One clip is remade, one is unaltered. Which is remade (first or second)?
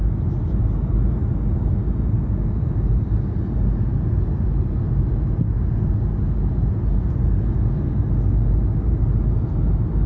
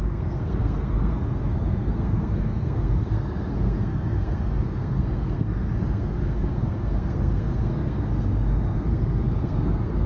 second